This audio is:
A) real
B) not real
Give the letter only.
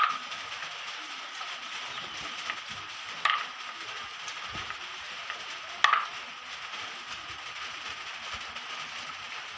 A